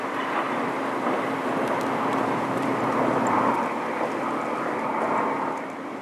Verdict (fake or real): real